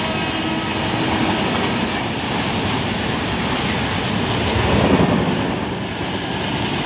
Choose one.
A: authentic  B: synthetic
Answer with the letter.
A